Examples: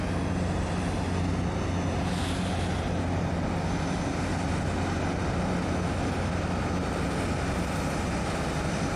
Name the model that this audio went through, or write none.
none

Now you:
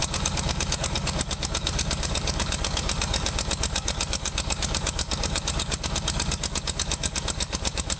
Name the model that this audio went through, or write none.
codec, DAC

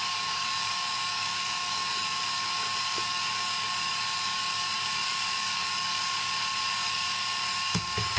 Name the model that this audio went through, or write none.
codec, DAC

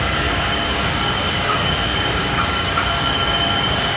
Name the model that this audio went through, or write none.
codec, DAC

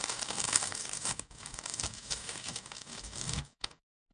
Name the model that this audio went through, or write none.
codec, DAC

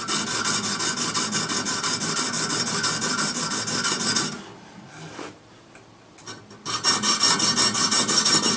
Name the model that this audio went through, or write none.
none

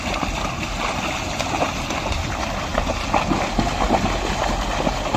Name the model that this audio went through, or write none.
none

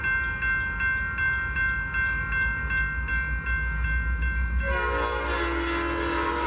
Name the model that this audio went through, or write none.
none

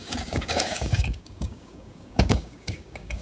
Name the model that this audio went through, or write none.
codec, DAC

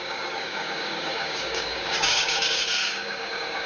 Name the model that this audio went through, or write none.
codec, DAC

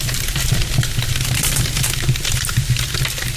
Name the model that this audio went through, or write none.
none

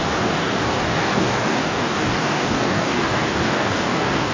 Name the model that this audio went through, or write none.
codec, DAC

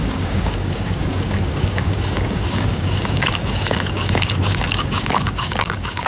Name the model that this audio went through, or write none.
codec, DAC